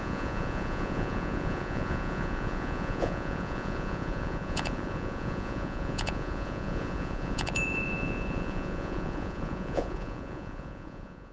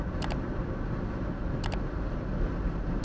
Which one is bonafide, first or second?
second